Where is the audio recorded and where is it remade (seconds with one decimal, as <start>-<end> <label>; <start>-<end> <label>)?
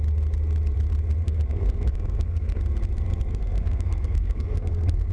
0.0-1.2 recorded; 1.2-2.6 remade; 2.6-3.3 recorded; 3.3-5.1 remade